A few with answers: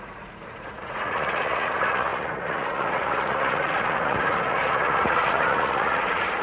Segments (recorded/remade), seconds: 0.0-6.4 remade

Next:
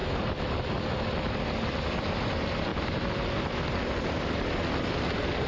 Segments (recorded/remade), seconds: 0.0-5.5 recorded

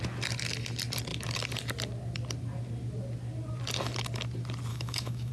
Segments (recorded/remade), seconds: 0.0-4.7 recorded; 4.7-5.3 remade

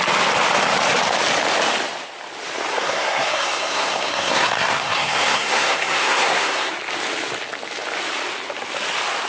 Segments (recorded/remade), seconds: 0.0-2.7 recorded; 2.7-6.7 remade; 6.7-9.3 recorded

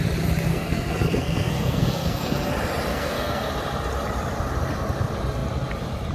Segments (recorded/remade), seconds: 0.0-0.5 recorded; 0.5-2.5 remade; 2.5-2.9 recorded; 2.9-3.5 remade; 3.5-6.1 recorded

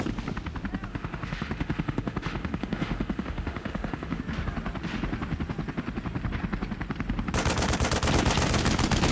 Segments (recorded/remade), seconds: 0.0-0.9 recorded; 0.9-4.2 remade; 4.2-9.1 recorded